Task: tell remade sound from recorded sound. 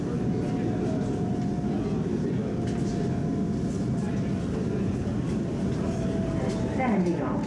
recorded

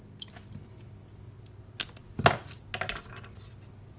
recorded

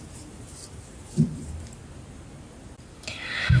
recorded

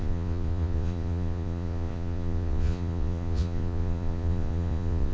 remade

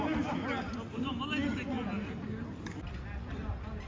recorded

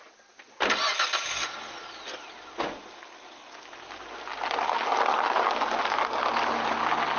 recorded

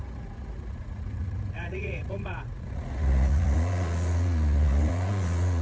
remade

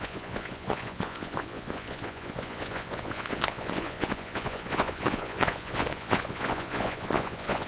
remade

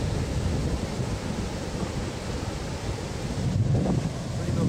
recorded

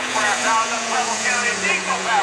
remade